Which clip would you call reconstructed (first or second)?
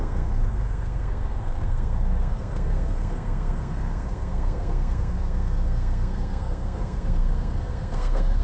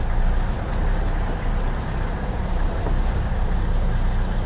first